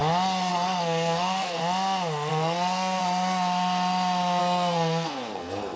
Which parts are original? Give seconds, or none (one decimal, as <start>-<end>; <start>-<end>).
0.0-0.5; 1.6-2.3; 3.0-4.4